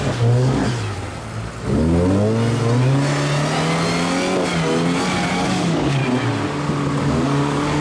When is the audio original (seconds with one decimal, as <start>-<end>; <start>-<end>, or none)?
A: 0.6-5.3; 6.0-7.0